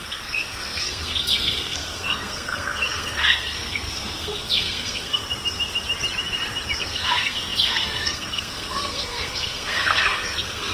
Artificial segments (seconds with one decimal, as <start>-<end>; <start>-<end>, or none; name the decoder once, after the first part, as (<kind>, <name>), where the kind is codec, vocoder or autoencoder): 0.0-5.2 (codec, SNAC); 6.8-10.7